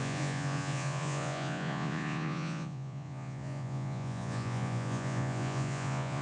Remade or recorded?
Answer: remade